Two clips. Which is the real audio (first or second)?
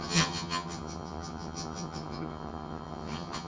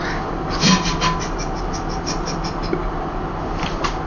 second